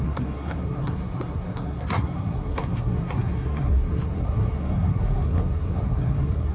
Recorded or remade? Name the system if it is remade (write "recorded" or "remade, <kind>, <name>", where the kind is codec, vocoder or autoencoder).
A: remade, codec, SNAC